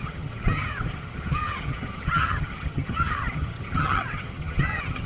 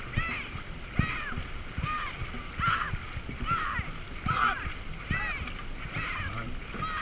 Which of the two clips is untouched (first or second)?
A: second